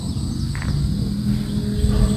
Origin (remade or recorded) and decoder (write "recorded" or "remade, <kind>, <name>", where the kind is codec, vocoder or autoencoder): recorded